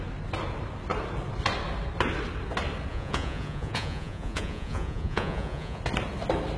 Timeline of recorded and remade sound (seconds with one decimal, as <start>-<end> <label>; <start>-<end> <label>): 0.0-2.9 recorded; 2.9-5.8 remade; 5.8-6.6 recorded